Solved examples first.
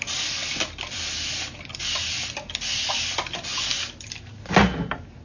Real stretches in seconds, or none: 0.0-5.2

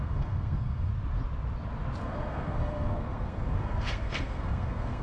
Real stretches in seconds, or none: 0.9-2.0